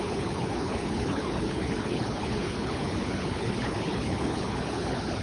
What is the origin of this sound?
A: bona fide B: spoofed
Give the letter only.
B